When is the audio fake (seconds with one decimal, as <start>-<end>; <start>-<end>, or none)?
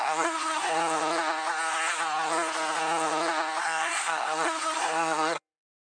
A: 0.0-0.8; 3.6-5.8